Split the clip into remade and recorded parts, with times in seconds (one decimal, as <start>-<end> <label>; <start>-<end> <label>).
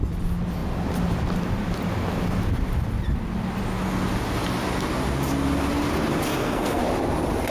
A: 0.0-6.3 recorded; 6.3-6.8 remade; 6.8-7.5 recorded